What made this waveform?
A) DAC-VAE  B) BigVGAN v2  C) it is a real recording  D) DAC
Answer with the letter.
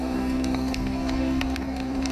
D